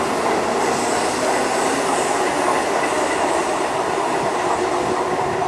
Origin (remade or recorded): recorded